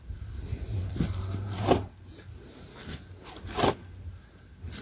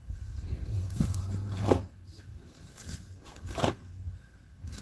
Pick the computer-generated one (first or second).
second